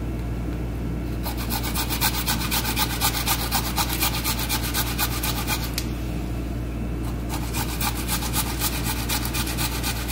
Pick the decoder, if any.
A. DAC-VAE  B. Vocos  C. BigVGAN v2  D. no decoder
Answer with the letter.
D